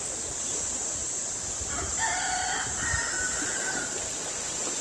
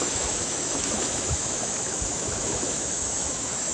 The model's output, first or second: second